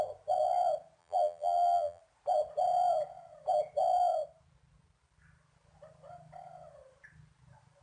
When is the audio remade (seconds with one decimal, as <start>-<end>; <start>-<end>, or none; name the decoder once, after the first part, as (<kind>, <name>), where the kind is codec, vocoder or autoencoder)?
1.0-2.0 (vocoder, BigVGAN v2)